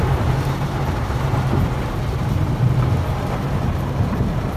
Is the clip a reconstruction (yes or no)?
yes